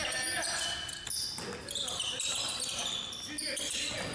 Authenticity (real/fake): real